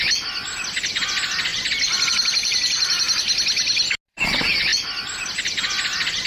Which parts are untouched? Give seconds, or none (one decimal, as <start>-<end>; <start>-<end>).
0.0-6.3